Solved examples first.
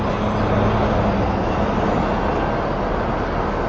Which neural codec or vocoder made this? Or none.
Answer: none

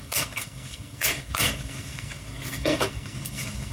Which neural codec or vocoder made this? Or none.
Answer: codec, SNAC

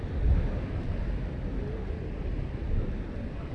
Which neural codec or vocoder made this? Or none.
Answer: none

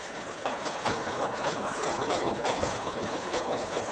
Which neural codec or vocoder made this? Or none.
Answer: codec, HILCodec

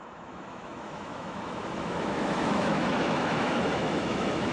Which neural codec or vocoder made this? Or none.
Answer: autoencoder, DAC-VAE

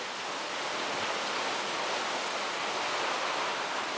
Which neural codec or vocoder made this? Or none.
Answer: none